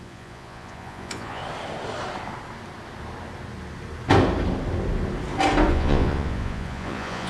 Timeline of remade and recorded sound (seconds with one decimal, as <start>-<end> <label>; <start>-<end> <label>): 0.0-1.4 remade; 1.4-5.7 recorded; 5.7-7.3 remade